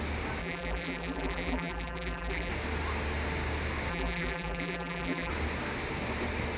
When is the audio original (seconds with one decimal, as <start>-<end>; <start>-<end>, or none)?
0.0-0.4; 2.5-3.9; 5.3-6.6